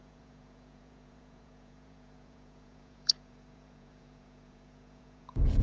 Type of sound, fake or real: fake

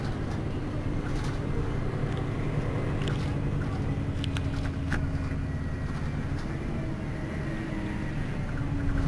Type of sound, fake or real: real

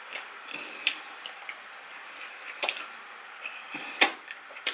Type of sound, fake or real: fake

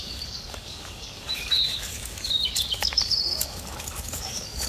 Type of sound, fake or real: fake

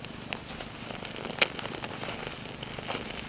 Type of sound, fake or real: real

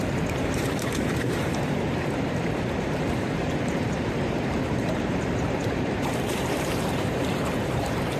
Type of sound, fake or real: fake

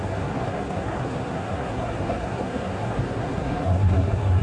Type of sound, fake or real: fake